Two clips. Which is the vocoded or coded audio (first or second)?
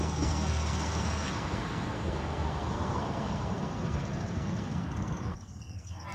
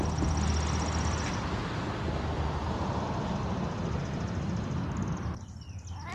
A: first